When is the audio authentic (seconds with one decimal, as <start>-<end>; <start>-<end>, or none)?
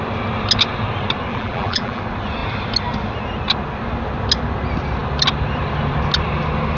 0.0-1.3; 2.0-6.8